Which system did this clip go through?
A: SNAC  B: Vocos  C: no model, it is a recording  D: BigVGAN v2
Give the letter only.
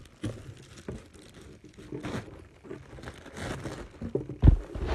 C